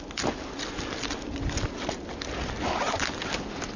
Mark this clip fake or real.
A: real